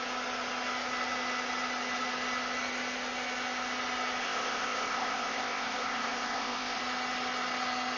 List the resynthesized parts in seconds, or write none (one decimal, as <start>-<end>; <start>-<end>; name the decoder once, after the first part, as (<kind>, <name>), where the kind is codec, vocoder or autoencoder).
4.2-6.8 (codec, ZipCodec)